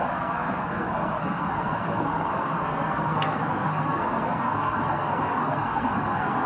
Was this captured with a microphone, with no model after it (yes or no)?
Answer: no